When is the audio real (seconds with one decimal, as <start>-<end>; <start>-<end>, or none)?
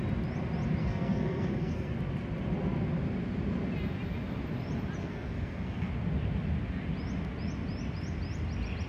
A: 0.0-0.8; 1.9-5.0; 5.9-8.9